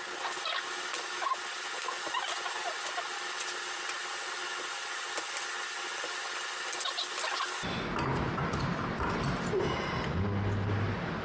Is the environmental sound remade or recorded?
recorded